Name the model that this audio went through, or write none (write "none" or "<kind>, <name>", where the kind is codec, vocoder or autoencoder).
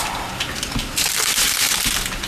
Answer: none